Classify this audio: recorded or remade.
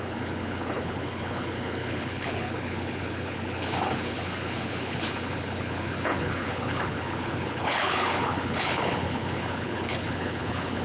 remade